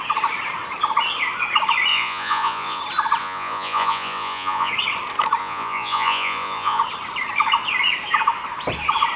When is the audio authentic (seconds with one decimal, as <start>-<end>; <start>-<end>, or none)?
0.0-1.9; 2.8-3.2; 4.7-5.4; 6.8-9.2